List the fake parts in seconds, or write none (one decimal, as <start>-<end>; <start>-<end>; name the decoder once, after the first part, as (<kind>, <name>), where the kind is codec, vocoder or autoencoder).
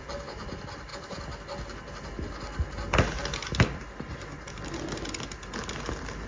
none